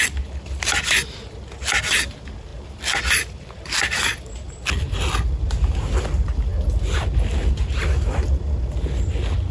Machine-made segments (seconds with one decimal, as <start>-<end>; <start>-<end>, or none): none